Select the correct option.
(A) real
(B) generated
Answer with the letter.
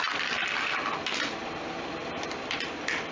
A